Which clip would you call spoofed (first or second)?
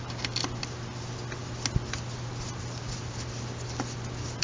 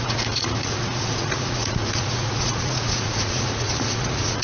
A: second